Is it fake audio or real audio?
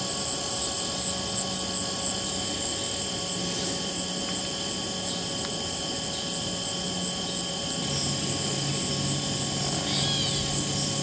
real